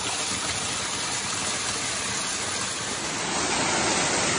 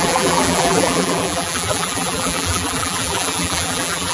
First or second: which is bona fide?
first